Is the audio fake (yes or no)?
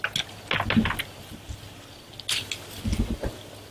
no